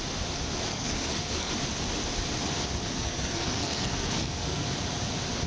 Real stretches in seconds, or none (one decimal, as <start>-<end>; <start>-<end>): 0.0-0.7; 1.5-2.9; 4.6-5.5